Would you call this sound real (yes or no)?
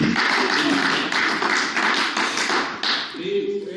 yes